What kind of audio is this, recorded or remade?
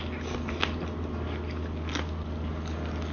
recorded